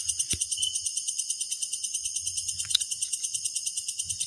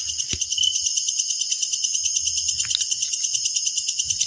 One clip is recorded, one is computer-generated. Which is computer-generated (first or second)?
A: first